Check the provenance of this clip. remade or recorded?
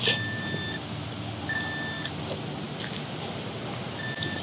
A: recorded